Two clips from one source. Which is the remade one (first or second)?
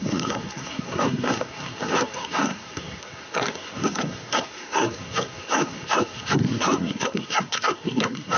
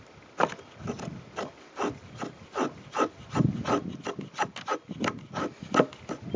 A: first